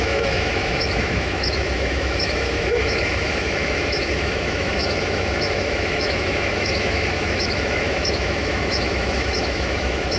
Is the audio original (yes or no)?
no